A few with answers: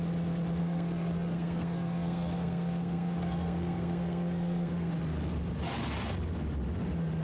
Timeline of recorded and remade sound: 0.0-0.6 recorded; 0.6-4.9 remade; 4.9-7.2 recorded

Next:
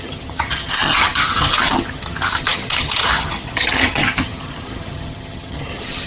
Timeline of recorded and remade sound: 0.0-6.1 remade